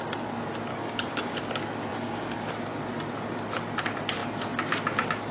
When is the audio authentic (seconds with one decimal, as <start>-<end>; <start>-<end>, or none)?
0.0-0.7; 1.4-1.9; 2.5-5.3